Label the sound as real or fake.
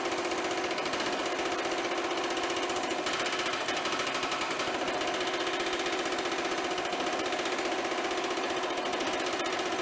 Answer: real